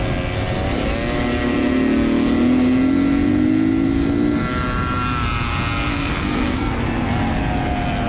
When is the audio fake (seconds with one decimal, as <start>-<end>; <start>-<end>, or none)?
5.9-7.4